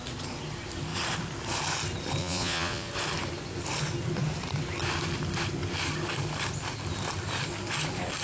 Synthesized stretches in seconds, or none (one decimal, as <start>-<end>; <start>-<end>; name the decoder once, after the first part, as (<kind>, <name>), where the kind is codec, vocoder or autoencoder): 2.2-2.9 (vocoder, Vocos)